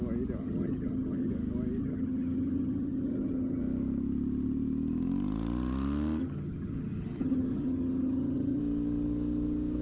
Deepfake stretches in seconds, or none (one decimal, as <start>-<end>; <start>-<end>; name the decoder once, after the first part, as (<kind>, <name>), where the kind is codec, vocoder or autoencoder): 0.4-1.3 (vocoder, HiFi-GAN); 1.8-3.6; 6.2-8.6